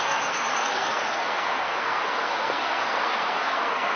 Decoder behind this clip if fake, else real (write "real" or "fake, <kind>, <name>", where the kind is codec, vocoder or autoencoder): fake, codec, SNAC